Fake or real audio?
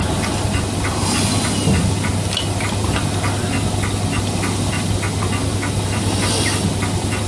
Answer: real